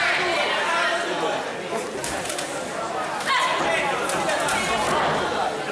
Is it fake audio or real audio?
real